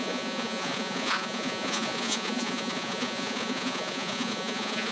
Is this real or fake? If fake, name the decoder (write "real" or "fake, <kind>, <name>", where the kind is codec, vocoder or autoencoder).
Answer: fake, vocoder, Vocos